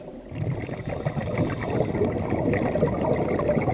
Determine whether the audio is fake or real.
real